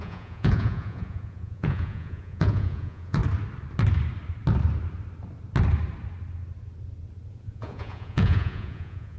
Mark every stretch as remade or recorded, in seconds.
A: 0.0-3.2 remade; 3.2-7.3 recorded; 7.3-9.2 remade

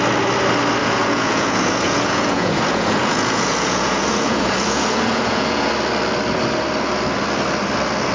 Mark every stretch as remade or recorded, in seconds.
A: 0.0-0.8 recorded; 0.8-5.7 remade; 5.7-8.1 recorded

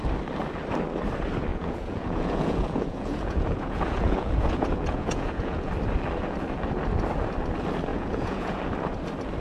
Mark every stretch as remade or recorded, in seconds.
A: 0.0-1.5 recorded; 1.5-5.7 remade; 5.7-7.9 recorded; 7.9-8.6 remade; 8.6-9.4 recorded

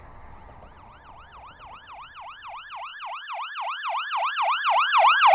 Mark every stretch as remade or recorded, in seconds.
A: 0.0-5.3 recorded